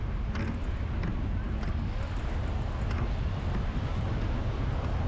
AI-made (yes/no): no